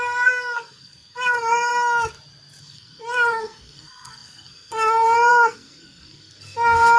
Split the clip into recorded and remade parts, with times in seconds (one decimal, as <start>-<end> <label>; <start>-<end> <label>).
0.0-1.7 remade; 1.7-2.6 recorded; 2.6-7.0 remade